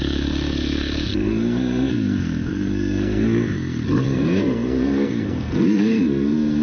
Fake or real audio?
fake